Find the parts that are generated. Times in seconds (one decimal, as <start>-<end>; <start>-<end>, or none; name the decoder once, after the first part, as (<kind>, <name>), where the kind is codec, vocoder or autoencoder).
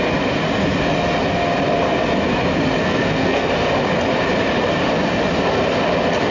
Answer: 2.8-3.5 (codec, SNAC)